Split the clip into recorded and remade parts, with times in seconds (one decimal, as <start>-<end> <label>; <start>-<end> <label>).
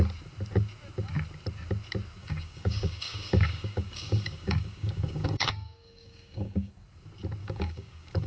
0.0-2.2 recorded; 2.2-6.7 remade; 6.7-7.4 recorded; 7.4-8.3 remade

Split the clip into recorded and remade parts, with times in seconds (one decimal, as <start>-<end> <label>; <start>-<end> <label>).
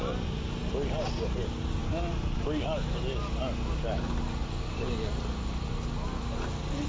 0.0-6.9 recorded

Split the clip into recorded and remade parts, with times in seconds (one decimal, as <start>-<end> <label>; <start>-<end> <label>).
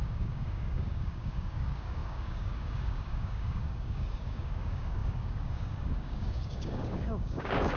0.0-7.8 remade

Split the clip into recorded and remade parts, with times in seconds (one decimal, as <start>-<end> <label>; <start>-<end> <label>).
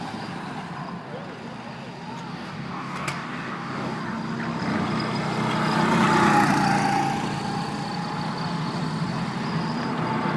0.0-2.3 recorded; 2.3-4.0 remade; 4.0-10.4 recorded